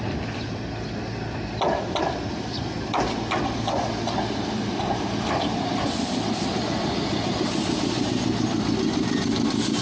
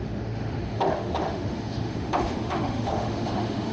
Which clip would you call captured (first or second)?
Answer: first